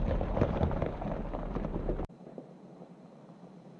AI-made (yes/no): yes